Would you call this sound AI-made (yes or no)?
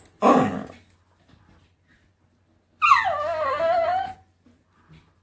no